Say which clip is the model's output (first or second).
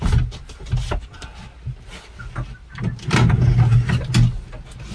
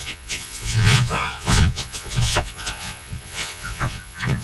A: second